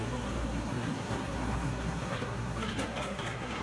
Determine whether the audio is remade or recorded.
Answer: remade